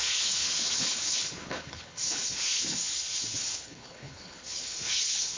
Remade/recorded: remade